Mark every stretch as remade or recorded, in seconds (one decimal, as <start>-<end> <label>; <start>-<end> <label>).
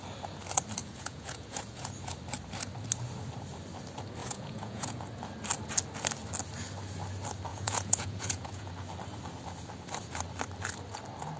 0.0-0.8 recorded; 0.8-1.8 remade; 1.8-4.2 recorded; 4.2-5.0 remade; 5.0-7.5 recorded; 7.5-8.7 remade; 8.7-11.4 recorded